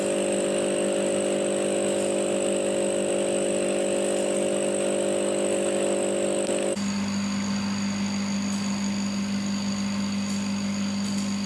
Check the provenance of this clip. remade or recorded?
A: recorded